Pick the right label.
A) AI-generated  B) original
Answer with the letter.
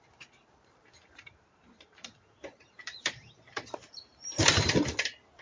A